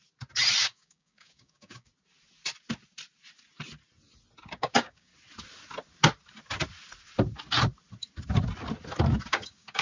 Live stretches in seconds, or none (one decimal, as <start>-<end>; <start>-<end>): 0.0-0.6; 1.9-4.5; 5.1-9.3